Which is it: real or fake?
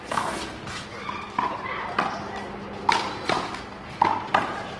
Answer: real